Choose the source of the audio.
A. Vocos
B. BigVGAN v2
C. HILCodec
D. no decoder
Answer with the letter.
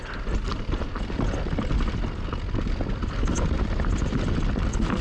D